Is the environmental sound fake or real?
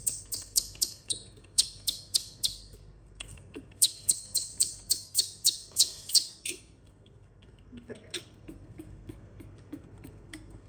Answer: fake